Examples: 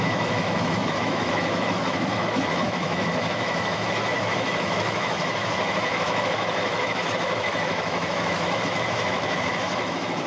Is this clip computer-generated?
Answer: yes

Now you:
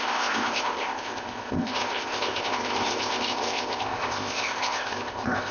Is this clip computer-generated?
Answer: yes